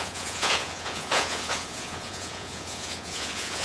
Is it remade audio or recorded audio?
remade